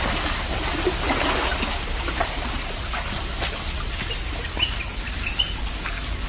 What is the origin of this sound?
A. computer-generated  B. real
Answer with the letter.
B